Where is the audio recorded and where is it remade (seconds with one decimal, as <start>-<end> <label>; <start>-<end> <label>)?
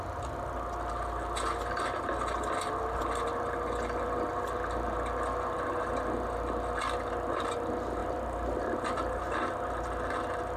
0.0-8.0 recorded; 8.0-9.2 remade; 9.2-10.6 recorded